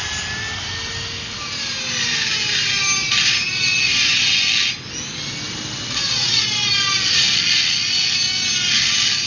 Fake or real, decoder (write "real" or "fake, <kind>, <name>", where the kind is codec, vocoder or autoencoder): real